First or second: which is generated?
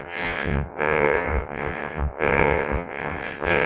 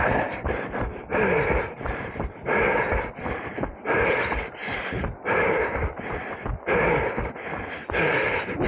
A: first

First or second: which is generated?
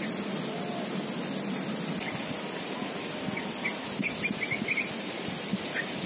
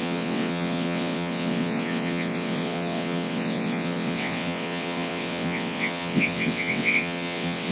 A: second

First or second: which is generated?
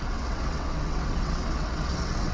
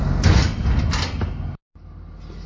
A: first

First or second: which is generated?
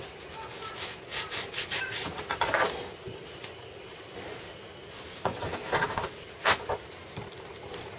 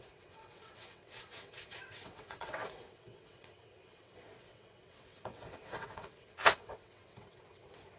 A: second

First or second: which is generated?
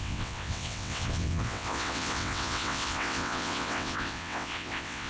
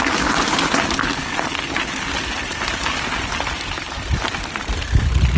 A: first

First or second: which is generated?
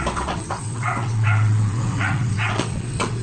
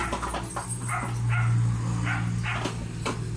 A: first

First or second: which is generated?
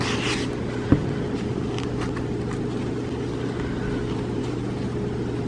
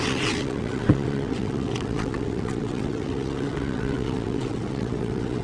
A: second